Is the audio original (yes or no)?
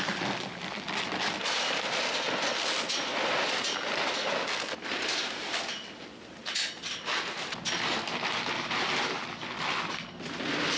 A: yes